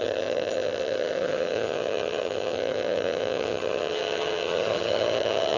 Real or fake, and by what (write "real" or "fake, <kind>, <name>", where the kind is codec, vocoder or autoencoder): fake, vocoder, HiFi-GAN